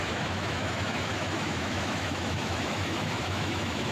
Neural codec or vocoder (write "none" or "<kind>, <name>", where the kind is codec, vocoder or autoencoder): autoencoder, DAC-VAE